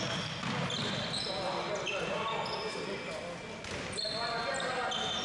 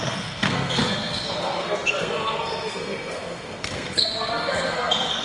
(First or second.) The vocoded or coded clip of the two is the second